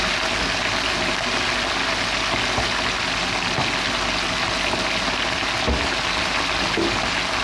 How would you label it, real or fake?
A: real